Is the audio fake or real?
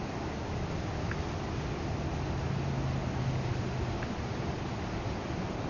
real